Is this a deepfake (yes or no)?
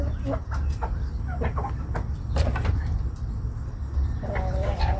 no